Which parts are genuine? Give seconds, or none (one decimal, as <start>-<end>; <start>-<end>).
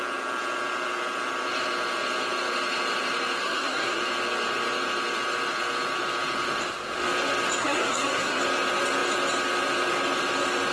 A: 0.0-3.4; 4.0-7.6; 8.4-10.7